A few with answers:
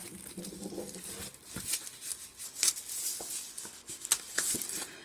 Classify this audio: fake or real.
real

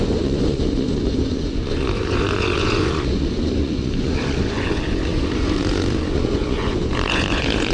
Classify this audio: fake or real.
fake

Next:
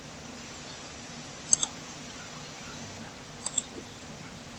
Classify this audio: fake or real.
real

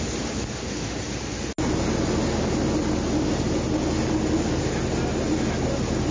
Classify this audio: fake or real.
real